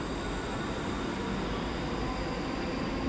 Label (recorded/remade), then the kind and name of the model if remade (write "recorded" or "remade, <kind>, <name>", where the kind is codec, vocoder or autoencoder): recorded